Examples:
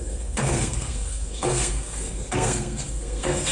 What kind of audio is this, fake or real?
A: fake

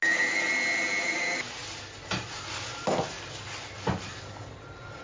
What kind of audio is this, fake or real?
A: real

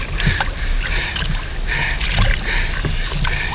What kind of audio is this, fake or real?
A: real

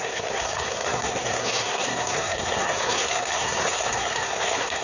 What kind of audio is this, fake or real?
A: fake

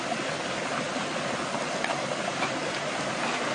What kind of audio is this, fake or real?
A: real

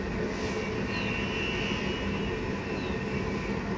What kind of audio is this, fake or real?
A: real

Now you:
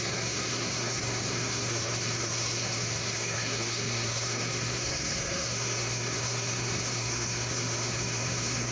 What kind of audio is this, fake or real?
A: fake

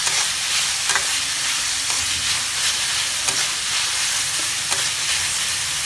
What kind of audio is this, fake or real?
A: real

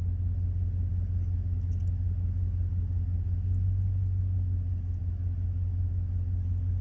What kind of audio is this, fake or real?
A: real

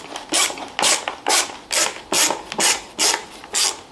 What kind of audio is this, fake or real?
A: real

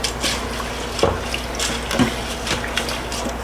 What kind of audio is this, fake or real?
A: real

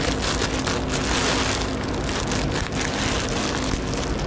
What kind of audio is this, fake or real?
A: real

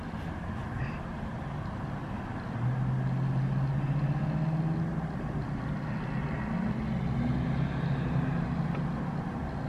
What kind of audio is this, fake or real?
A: real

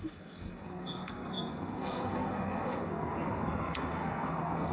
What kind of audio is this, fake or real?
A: fake